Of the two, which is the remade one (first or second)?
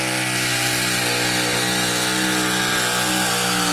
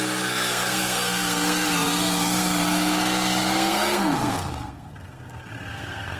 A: second